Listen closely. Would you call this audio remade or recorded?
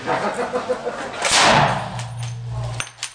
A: recorded